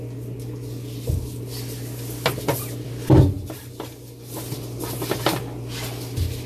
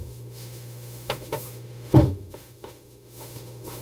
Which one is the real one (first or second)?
first